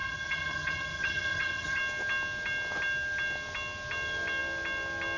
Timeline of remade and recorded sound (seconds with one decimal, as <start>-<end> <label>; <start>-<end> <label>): 0.0-1.8 remade; 1.8-5.2 recorded